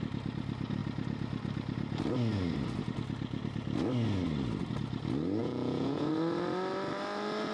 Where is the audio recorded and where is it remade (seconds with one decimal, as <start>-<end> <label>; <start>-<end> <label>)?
0.0-5.4 recorded; 5.4-6.1 remade; 6.1-7.5 recorded